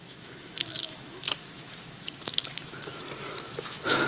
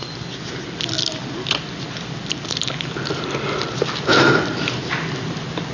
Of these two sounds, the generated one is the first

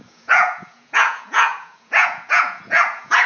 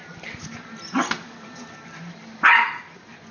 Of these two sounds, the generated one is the first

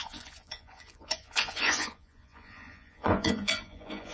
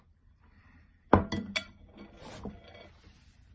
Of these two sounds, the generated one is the first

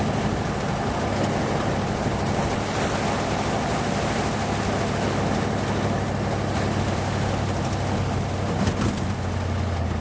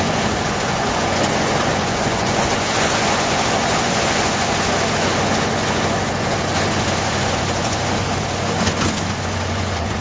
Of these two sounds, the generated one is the second